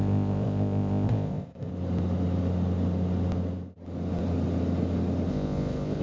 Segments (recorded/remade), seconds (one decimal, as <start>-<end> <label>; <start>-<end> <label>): 0.0-1.7 remade; 1.7-5.3 recorded; 5.3-6.0 remade